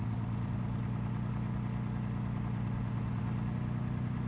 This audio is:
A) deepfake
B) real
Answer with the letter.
B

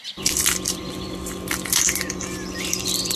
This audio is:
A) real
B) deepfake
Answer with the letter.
B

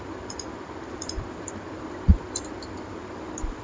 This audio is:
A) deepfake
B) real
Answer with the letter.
A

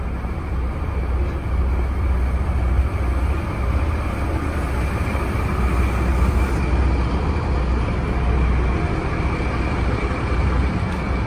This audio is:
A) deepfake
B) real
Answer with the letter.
B